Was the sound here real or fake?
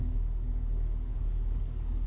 fake